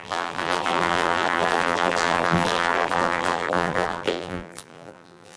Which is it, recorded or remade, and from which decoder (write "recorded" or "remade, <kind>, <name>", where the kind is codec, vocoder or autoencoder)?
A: remade, vocoder, BigVGAN v2